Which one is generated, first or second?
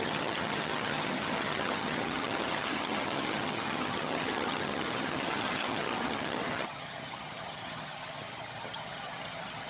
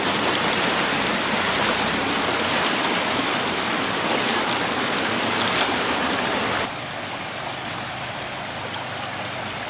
first